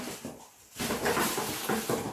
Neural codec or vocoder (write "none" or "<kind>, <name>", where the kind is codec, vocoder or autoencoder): vocoder, BigVGAN v2